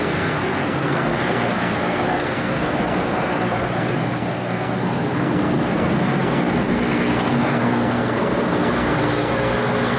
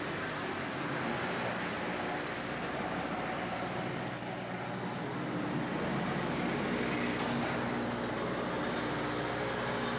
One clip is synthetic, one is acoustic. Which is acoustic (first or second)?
second